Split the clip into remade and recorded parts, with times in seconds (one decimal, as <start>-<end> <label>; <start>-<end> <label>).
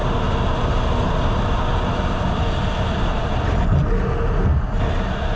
0.0-5.4 recorded